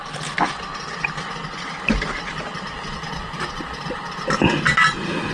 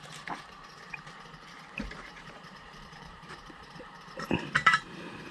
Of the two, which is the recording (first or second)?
first